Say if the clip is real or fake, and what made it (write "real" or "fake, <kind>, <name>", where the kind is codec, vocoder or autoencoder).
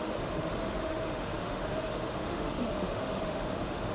fake, autoencoder, DAC-VAE